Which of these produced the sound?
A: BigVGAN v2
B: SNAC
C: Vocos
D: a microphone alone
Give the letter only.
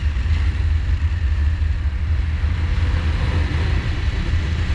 D